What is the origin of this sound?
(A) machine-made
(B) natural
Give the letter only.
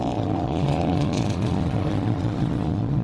A